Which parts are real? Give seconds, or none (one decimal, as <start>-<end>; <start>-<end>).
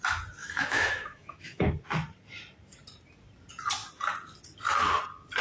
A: 0.0-0.4; 1.7-5.4